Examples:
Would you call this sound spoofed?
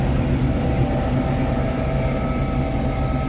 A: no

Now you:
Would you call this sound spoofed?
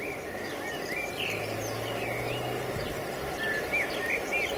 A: no